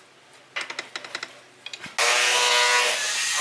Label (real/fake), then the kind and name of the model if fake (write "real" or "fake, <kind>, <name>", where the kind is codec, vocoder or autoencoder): real